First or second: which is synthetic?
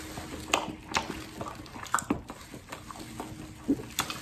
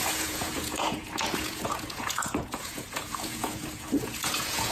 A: second